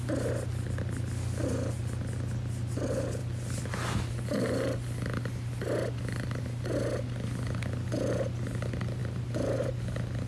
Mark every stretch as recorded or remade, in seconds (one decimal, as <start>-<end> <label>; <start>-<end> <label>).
0.0-9.0 recorded; 9.0-9.8 remade; 9.8-10.3 recorded